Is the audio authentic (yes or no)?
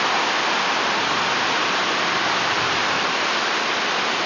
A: yes